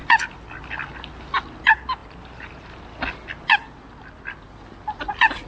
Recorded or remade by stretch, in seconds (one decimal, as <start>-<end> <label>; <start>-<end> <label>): 0.0-5.5 recorded